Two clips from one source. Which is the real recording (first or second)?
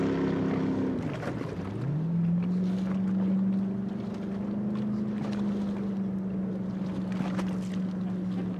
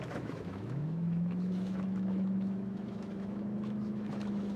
first